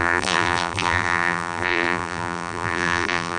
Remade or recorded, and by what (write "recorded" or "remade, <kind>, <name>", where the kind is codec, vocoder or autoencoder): remade, vocoder, BigVGAN v2